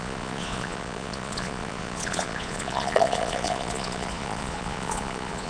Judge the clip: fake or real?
fake